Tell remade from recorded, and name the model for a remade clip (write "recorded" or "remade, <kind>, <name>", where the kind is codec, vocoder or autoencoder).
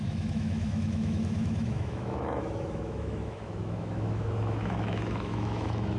remade, autoencoder, DAC-VAE